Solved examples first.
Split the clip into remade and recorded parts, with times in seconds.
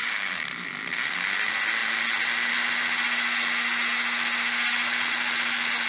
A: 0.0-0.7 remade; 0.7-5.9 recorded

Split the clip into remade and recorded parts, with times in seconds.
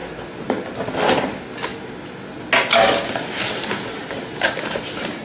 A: 0.0-4.0 recorded; 4.0-5.2 remade